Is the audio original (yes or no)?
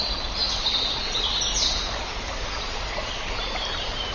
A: yes